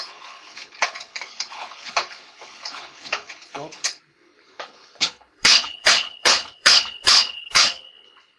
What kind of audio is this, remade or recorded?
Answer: remade